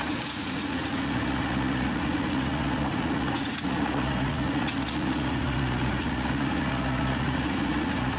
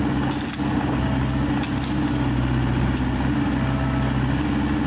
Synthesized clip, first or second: first